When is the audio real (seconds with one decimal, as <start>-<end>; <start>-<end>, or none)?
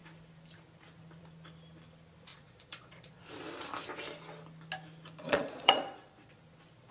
0.0-2.3; 3.2-5.2; 6.4-6.9